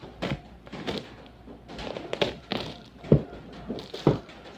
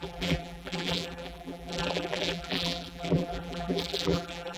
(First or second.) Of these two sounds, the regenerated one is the second